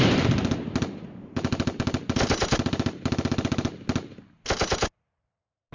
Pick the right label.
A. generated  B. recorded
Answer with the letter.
B